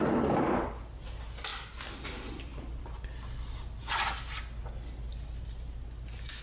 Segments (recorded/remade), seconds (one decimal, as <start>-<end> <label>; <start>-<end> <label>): 0.0-6.4 recorded